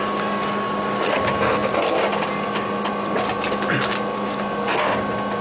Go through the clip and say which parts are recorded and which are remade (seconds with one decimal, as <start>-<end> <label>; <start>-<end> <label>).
0.0-5.4 recorded